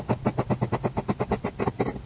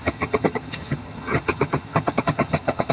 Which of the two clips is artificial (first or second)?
second